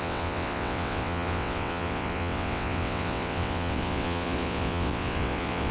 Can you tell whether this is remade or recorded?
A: remade